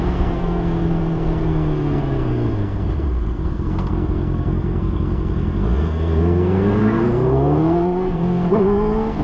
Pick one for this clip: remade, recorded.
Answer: remade